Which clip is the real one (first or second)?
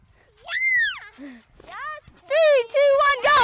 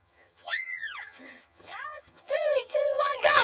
first